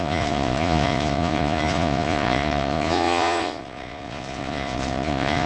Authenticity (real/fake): fake